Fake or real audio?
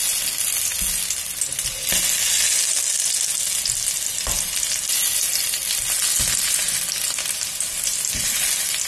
real